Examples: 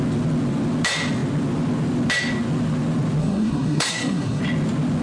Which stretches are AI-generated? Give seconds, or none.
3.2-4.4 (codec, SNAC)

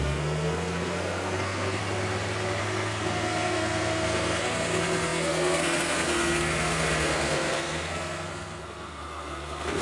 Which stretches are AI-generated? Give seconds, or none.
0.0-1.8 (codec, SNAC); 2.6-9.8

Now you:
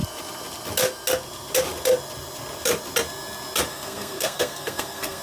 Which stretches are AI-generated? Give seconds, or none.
3.7-5.2 (codec, SNAC)